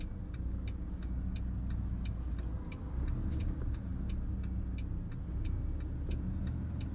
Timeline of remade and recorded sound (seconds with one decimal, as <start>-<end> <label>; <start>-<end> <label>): 0.0-6.9 recorded